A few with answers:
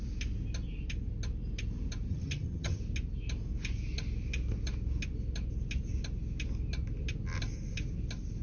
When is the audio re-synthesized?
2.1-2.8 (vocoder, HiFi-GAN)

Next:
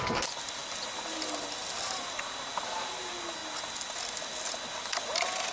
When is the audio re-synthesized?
none